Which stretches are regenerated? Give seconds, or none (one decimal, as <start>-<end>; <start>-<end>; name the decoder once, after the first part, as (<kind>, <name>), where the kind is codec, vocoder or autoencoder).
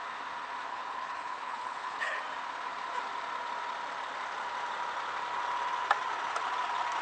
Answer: 0.7-2.2 (codec, HILCodec)